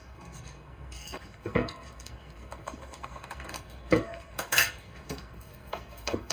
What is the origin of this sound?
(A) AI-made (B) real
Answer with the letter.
A